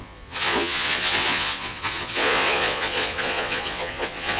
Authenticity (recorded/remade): remade